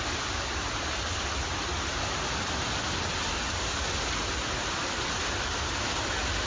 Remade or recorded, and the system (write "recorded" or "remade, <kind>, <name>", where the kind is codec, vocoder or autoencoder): recorded